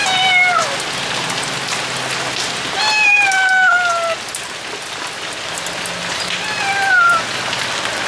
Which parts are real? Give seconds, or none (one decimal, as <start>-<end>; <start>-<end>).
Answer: 0.0-8.1